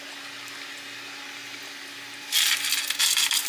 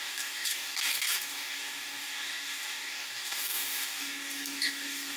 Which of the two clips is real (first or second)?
first